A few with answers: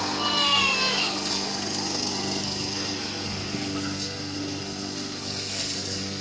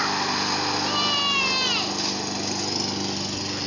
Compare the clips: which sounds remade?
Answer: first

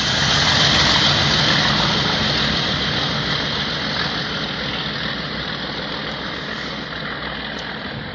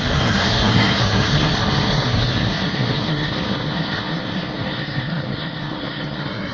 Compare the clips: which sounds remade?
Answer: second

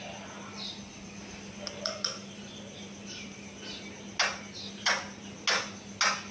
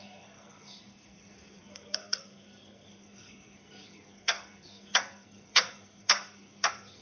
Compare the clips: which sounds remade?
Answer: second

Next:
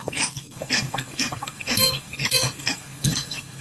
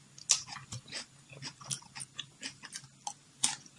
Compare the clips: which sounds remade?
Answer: first